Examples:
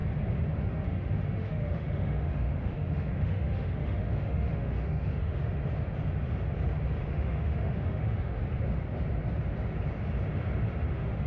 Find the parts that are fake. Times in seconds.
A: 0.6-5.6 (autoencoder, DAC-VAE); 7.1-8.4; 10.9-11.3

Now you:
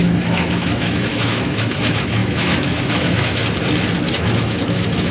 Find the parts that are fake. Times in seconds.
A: 0.0-3.4 (autoencoder, DAC-VAE); 4.1-5.1

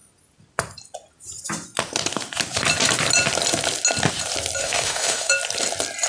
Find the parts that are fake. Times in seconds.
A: 4.6-5.3 (autoencoder, DAC-VAE)

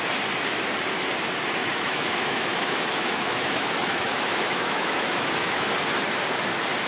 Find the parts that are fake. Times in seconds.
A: 1.6-5.7 (autoencoder, DAC-VAE)